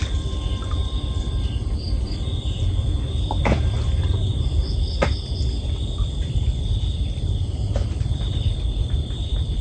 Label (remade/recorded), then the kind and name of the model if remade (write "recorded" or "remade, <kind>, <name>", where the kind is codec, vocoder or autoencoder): remade, vocoder, BigVGAN v2